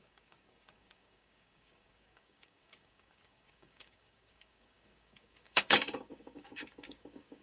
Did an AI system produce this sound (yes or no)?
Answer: yes